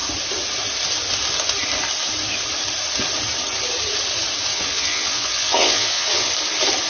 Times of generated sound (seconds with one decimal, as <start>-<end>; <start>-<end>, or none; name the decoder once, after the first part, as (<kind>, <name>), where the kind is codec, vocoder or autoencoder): 4.5-6.3 (vocoder, WaveNeXt)